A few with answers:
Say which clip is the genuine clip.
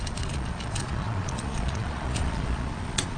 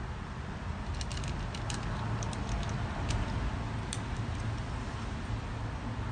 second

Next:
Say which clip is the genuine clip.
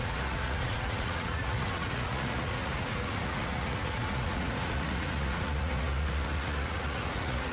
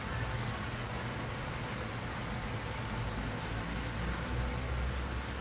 second